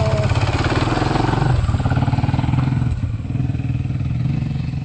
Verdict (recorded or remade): recorded